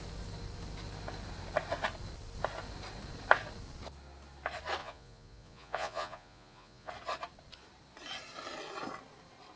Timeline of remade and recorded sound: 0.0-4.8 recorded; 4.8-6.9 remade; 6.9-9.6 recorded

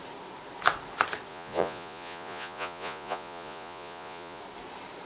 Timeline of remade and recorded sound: 0.0-1.3 recorded; 1.3-4.4 remade; 4.4-5.1 recorded